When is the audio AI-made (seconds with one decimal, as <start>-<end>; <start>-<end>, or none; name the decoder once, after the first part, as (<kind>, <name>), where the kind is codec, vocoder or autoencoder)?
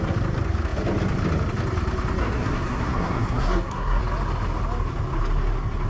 2.2-4.0 (codec, SNAC)